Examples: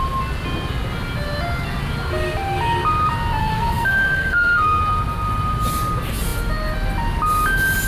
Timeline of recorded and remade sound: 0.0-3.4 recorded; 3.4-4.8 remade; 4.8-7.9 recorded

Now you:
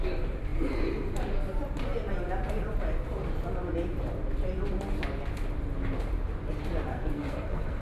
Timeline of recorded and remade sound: 0.0-6.9 recorded; 6.9-7.8 remade

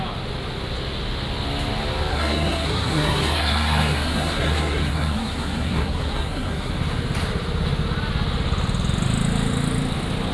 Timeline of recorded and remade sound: 0.0-2.1 recorded; 2.1-6.7 remade; 6.7-10.3 recorded